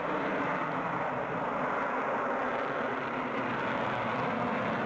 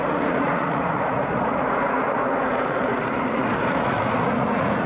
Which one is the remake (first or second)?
second